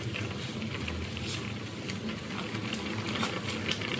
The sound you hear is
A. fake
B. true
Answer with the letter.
B